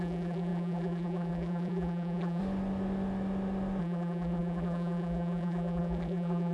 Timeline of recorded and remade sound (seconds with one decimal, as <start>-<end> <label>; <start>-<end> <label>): 0.0-2.4 remade; 2.4-3.8 recorded; 3.8-6.5 remade

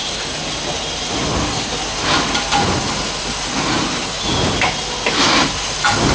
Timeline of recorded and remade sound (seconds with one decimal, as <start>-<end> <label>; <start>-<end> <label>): 0.0-6.1 recorded

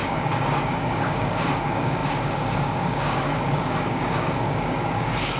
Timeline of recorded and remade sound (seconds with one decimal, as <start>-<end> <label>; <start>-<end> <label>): 0.0-5.4 remade

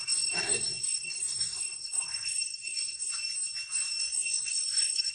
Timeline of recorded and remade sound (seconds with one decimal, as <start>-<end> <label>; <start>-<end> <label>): 0.0-3.1 remade; 3.1-4.0 recorded; 4.0-5.1 remade

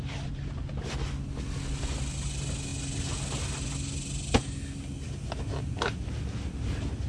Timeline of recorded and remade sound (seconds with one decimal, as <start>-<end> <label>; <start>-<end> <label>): 0.0-7.1 recorded